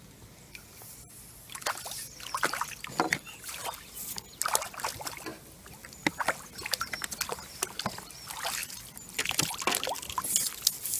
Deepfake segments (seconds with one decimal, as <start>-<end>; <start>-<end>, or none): none